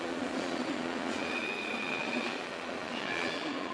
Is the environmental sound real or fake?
fake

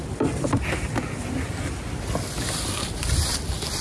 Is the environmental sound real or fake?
real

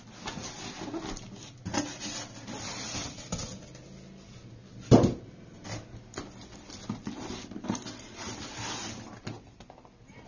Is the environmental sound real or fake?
real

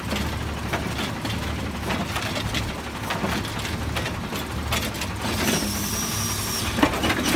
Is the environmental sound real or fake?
real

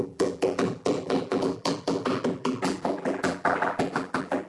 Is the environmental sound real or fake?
fake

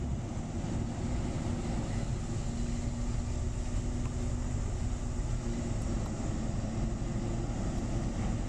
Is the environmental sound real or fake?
real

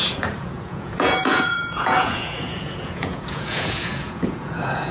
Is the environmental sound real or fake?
fake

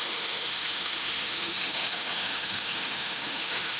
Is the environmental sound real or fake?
fake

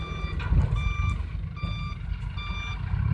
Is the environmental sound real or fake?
real